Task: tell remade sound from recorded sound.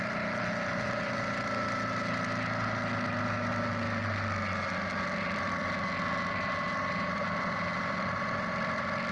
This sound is recorded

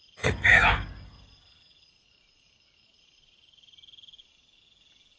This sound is recorded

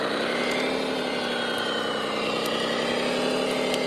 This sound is recorded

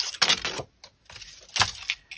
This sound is recorded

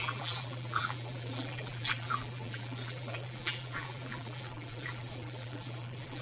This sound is remade